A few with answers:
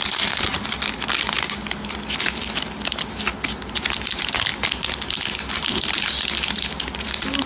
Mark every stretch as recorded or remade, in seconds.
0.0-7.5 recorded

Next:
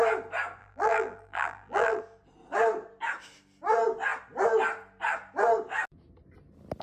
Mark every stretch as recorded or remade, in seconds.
0.0-0.6 recorded; 0.6-2.0 remade; 2.0-6.8 recorded